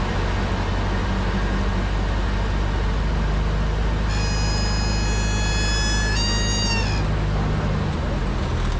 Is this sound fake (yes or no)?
no